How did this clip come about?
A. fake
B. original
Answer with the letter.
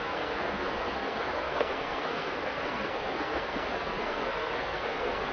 A